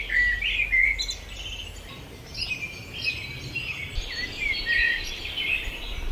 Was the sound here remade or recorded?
recorded